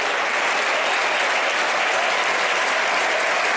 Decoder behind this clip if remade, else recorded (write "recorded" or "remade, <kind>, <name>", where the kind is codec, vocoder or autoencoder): recorded